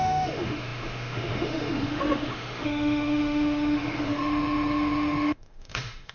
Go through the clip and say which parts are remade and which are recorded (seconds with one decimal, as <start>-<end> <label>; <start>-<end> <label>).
0.0-6.1 remade

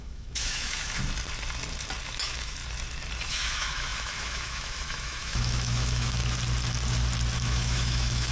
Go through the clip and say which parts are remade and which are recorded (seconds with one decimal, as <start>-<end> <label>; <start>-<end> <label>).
0.0-1.0 remade; 1.0-2.1 recorded; 2.1-2.6 remade; 2.6-3.3 recorded; 3.3-6.2 remade; 6.2-7.4 recorded; 7.4-8.3 remade

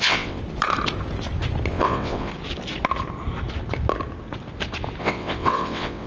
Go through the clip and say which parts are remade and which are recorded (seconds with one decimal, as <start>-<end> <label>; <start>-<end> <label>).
0.0-0.4 remade; 0.4-1.7 recorded; 1.7-2.3 remade; 2.3-5.0 recorded; 5.0-6.1 remade

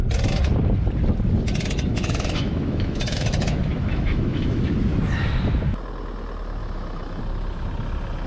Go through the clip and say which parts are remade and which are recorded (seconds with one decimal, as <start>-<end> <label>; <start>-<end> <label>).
0.0-1.9 recorded; 1.9-4.6 remade; 4.6-6.6 recorded; 6.6-7.2 remade; 7.2-8.3 recorded

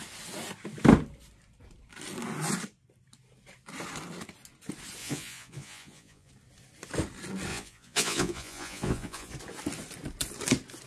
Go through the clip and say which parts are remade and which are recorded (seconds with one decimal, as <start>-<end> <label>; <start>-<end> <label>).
0.0-5.0 recorded; 5.0-6.3 remade; 6.3-7.5 recorded; 7.5-9.3 remade; 9.3-10.9 recorded

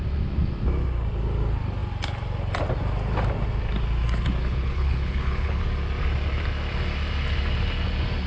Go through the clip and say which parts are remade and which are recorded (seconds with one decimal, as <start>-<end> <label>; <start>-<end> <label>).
0.0-4.4 recorded; 4.4-5.6 remade; 5.6-8.3 recorded

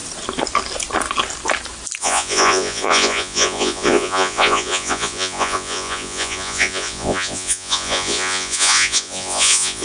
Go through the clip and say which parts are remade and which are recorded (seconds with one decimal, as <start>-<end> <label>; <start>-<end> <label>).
0.0-2.0 recorded; 2.0-9.8 remade

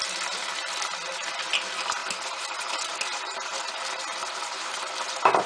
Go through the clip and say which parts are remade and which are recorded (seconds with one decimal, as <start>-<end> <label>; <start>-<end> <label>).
0.0-2.0 recorded; 2.0-3.7 remade; 3.7-4.2 recorded; 4.2-4.7 remade; 4.7-5.5 recorded